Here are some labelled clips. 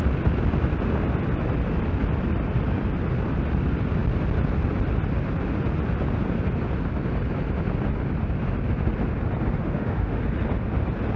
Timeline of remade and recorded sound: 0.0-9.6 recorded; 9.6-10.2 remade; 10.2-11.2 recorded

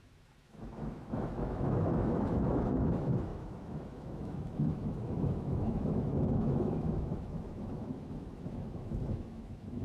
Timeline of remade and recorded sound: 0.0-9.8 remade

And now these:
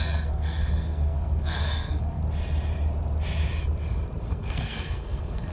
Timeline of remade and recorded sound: 0.0-2.2 remade; 2.2-4.3 recorded; 4.3-5.5 remade

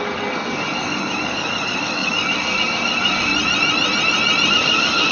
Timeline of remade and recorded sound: 0.0-3.3 remade; 3.3-4.5 recorded; 4.5-5.1 remade

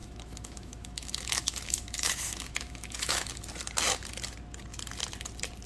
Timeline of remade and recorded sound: 0.0-3.4 remade; 3.4-5.7 recorded

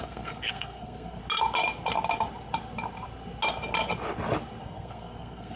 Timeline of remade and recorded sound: 0.0-1.2 remade; 1.2-4.6 recorded; 4.6-5.6 remade

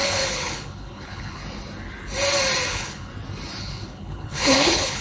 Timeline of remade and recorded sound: 0.0-1.4 remade; 1.4-2.7 recorded; 2.7-3.1 remade; 3.1-3.6 recorded; 3.6-5.0 remade